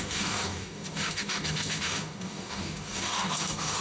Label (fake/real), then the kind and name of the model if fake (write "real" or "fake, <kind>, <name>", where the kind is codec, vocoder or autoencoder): fake, codec, DAC